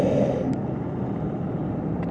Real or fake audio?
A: real